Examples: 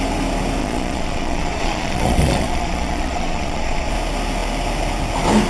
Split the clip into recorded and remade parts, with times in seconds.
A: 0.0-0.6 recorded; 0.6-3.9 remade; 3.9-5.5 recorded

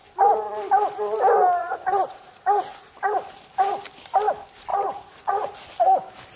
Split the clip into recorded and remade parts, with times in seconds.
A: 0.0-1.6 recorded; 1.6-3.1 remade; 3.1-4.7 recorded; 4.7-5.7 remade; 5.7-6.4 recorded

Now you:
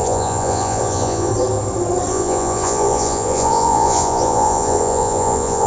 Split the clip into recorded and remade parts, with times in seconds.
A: 0.0-1.3 remade; 1.3-2.1 recorded; 2.1-5.7 remade

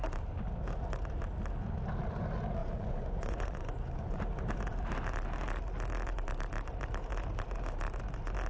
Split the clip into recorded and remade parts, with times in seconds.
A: 0.0-2.6 recorded; 2.6-4.2 remade; 4.2-8.5 recorded

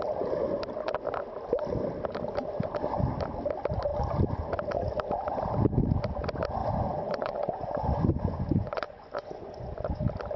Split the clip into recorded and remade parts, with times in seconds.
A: 0.0-6.6 recorded; 6.6-10.0 remade; 10.0-10.4 recorded